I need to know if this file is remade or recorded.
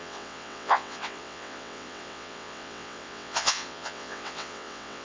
remade